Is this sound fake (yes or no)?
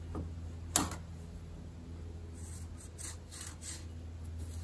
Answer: no